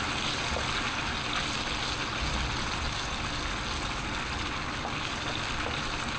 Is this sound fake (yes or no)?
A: no